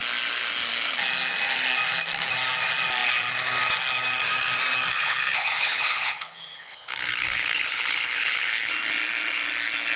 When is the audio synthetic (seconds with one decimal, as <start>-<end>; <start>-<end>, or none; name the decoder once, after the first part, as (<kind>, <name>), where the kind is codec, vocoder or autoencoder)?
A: 4.9-8.7 (codec, HILCodec)